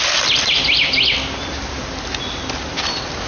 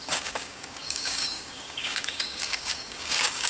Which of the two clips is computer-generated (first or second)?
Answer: second